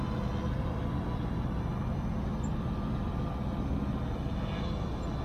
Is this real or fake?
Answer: real